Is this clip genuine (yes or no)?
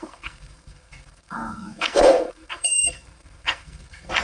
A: no